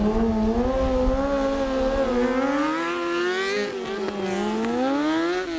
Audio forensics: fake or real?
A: real